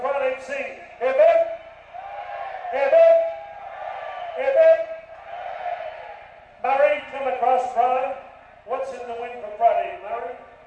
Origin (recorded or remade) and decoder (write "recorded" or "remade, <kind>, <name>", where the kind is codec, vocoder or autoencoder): recorded